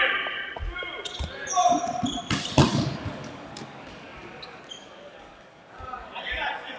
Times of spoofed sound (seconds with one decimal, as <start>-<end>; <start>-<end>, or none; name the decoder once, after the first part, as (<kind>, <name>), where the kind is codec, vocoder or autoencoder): 2.7-6.1 (codec, DAC)